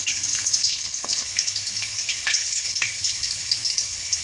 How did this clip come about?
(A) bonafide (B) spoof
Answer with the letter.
B